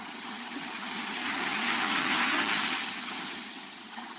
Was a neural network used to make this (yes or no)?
yes